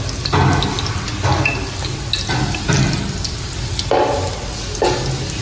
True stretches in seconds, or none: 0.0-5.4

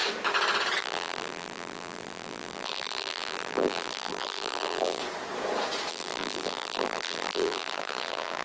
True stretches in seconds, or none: 0.0-0.8; 5.0-5.9